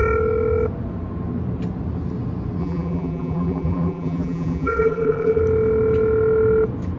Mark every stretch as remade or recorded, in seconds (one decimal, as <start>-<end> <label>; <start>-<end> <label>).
0.0-2.6 recorded; 2.6-5.4 remade; 5.4-7.0 recorded